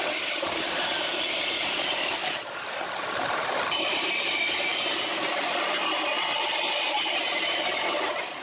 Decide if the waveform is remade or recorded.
remade